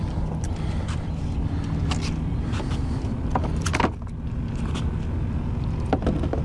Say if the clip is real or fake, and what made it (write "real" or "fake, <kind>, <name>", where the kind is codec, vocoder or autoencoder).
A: real